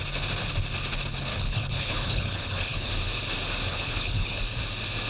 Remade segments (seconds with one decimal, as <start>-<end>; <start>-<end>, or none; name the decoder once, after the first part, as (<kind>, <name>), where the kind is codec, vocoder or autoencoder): 1.3-2.9 (codec, HILCodec); 3.7-4.4